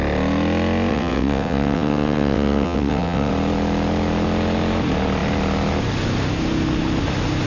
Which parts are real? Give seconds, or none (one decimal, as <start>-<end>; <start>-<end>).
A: 0.0-0.9; 3.3-7.5

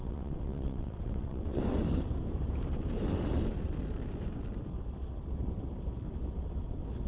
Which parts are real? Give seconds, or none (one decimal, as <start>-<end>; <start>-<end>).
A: 1.6-7.1

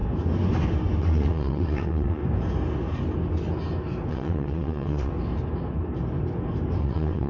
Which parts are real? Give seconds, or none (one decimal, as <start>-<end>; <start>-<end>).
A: 0.0-1.0; 2.2-4.1; 5.1-6.8

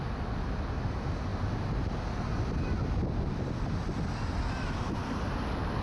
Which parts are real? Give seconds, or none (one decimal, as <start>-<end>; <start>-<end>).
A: 0.0-5.8

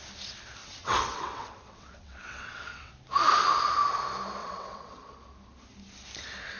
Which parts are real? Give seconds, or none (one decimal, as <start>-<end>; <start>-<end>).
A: 0.0-0.6; 2.9-4.4; 5.1-6.6